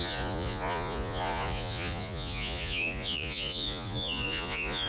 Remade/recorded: remade